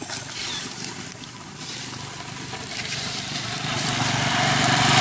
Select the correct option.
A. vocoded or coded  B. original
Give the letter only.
A